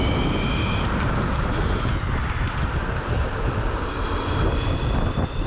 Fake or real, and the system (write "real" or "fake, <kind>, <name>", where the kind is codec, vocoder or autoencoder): real